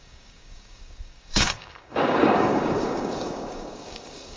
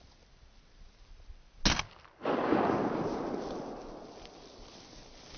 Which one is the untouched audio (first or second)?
second